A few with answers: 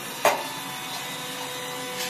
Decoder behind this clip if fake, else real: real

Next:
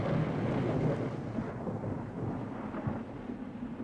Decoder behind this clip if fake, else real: real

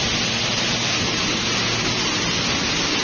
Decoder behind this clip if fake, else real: real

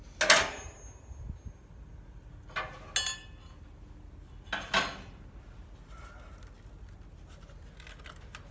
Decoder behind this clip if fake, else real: real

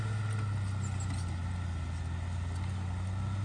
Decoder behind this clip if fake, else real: real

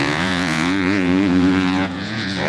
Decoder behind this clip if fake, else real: fake, vocoder, Vocos